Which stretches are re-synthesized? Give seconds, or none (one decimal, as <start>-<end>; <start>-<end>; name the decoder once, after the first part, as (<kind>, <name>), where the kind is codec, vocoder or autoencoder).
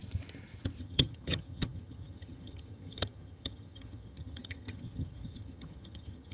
0.8-6.3 (vocoder, HiFi-GAN)